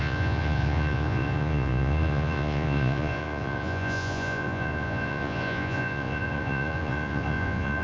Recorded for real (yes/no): no